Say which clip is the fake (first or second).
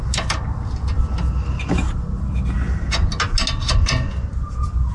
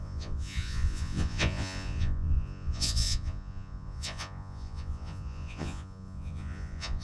second